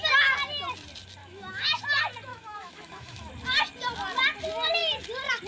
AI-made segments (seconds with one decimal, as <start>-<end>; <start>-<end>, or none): 1.2-1.8; 2.3-3.3